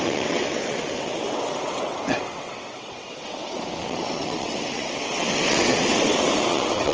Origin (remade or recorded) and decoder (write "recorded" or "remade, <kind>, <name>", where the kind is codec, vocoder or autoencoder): remade, vocoder, WaveNeXt